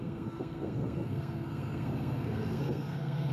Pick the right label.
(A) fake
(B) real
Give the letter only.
A